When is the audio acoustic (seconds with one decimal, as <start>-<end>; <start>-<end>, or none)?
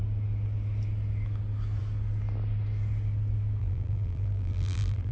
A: 0.0-3.6